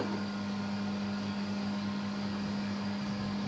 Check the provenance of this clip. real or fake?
fake